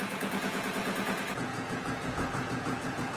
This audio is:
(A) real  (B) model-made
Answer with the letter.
B